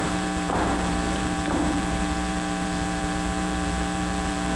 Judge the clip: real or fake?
fake